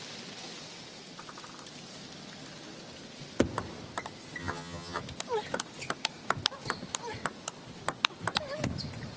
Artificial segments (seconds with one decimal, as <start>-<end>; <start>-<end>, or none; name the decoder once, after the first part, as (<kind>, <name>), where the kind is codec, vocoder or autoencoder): 4.4-5.0 (vocoder, HiFi-GAN)